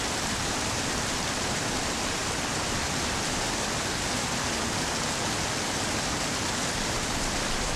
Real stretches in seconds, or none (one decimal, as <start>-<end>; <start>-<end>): 0.0-7.8